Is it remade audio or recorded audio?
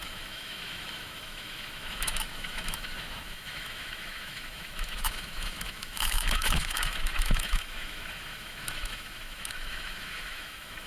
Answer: remade